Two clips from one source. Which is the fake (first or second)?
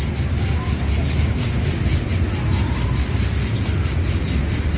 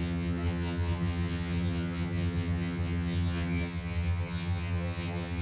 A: second